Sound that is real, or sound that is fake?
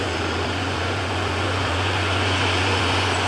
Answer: fake